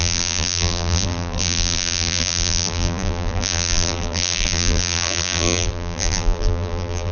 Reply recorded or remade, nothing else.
remade